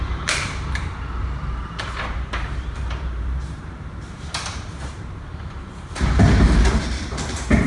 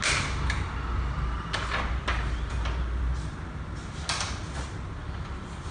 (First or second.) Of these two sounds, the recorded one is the second